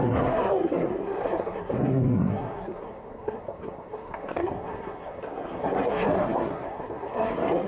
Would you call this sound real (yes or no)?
no